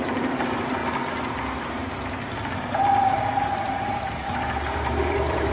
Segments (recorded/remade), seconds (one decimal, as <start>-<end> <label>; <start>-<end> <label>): 0.0-0.8 remade; 0.8-4.1 recorded; 4.1-5.5 remade